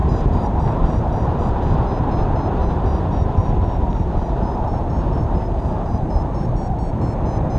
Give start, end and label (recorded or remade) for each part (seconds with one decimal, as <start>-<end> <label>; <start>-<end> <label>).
0.0-1.4 remade; 1.4-3.9 recorded; 3.9-6.5 remade; 6.5-7.6 recorded